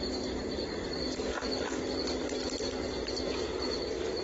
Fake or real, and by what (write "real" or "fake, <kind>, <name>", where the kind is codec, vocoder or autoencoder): real